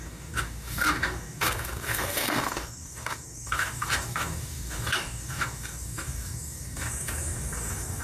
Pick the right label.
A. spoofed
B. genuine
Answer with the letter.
A